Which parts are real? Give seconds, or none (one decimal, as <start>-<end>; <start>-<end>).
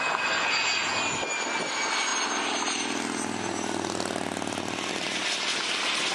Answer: 0.0-6.1